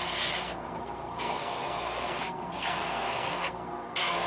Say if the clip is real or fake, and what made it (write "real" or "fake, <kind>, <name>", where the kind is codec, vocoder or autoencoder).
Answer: fake, codec, SNAC